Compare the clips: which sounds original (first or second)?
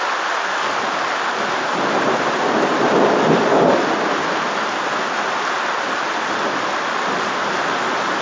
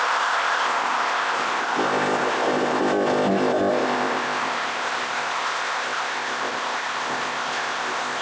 first